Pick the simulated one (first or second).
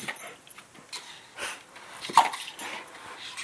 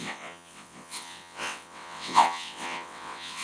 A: second